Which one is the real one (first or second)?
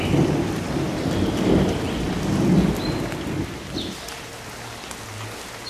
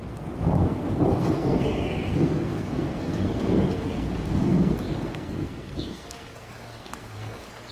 first